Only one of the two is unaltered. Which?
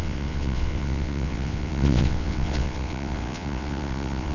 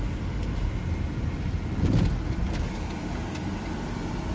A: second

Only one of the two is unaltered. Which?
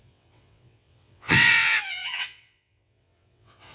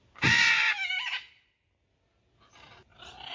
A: second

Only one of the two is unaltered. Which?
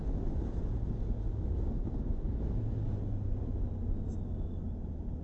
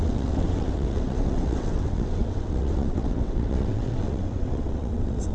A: first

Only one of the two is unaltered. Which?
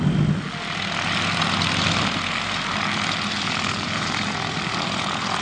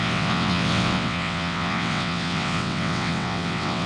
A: first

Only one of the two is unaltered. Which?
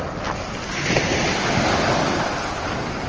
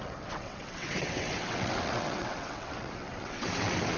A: first